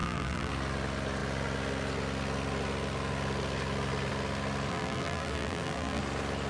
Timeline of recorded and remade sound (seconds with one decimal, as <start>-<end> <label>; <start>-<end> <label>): 0.0-0.5 remade; 0.5-4.7 recorded; 4.7-6.0 remade; 6.0-6.5 recorded